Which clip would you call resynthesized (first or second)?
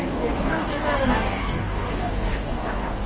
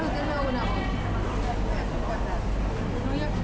first